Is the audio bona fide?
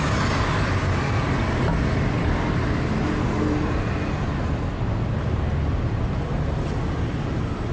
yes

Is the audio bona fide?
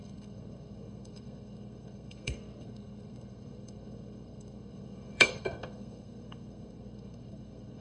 no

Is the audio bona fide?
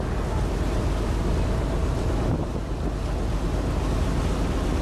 yes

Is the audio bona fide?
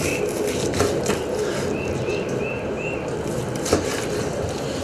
yes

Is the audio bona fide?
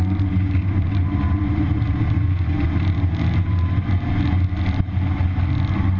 yes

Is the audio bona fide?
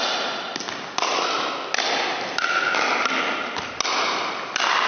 yes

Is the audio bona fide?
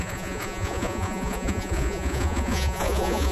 no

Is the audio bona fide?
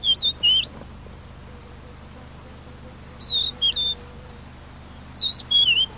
yes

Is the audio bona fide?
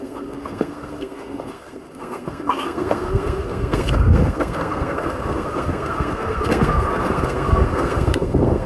no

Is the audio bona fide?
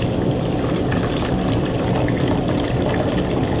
no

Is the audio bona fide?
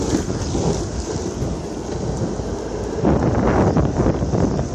yes